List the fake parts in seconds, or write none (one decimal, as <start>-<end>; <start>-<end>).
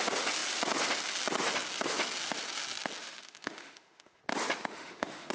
3.0-4.2; 4.7-5.3